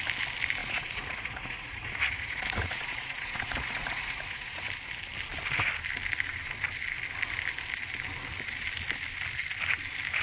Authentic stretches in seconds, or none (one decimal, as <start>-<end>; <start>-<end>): 0.0-0.6; 4.7-10.2